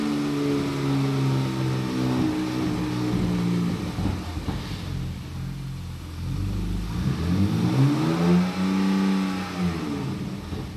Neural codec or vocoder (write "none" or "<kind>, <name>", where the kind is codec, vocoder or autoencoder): none